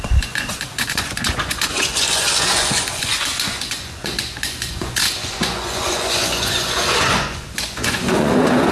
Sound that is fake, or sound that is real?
fake